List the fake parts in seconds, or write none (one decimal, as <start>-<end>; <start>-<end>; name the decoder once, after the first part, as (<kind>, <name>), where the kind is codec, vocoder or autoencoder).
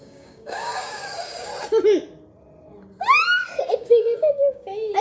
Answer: 0.0-1.5 (codec, DAC); 3.6-5.0